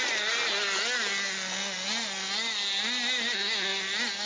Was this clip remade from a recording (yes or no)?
no